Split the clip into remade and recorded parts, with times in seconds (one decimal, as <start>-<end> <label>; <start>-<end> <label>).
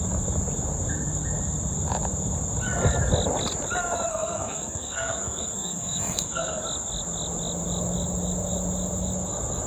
0.0-4.1 recorded; 4.1-6.6 remade; 6.6-9.7 recorded